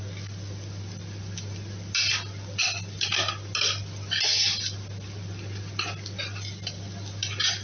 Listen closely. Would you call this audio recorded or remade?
recorded